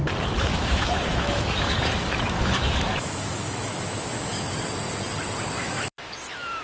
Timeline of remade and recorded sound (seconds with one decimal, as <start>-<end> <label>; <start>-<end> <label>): 0.0-0.5 recorded; 0.5-4.5 remade; 4.5-5.6 recorded; 5.6-6.6 remade